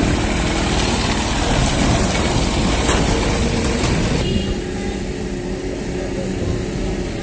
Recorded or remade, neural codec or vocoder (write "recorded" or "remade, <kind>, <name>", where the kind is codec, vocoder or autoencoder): recorded